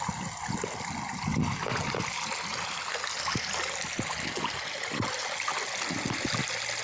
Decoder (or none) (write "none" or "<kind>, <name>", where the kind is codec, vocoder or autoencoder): none